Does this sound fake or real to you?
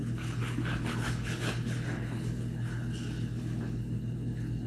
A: fake